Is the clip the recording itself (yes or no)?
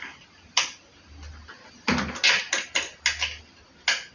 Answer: yes